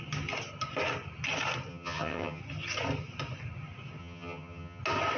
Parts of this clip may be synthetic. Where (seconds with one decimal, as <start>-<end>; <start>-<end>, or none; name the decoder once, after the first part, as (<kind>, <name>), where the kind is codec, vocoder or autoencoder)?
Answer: 1.7-2.4 (vocoder, HiFi-GAN); 4.0-4.8